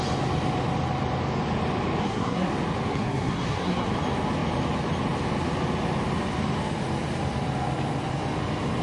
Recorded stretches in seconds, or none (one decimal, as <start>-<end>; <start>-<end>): 0.0-2.0; 2.5-2.9; 3.9-8.8